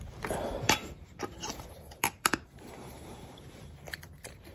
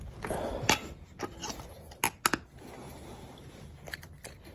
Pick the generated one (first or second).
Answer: first